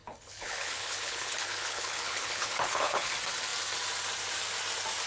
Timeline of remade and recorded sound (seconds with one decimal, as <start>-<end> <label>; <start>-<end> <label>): 0.0-3.1 remade; 3.1-5.1 recorded